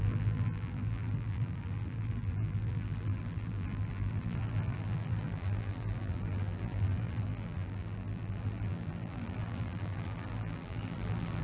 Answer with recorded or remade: remade